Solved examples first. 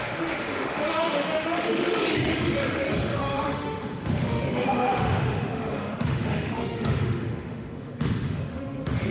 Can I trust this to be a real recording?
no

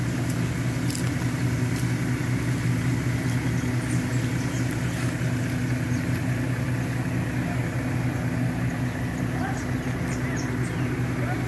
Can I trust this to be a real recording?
yes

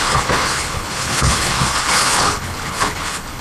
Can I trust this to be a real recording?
no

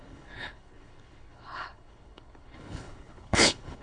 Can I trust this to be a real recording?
no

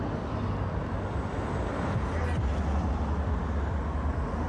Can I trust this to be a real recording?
yes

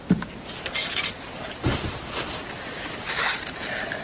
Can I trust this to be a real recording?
yes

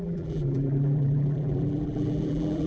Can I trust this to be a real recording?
no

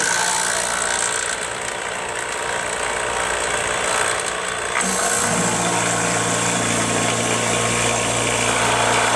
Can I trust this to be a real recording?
yes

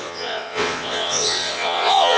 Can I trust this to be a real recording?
no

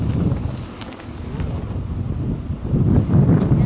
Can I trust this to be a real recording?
yes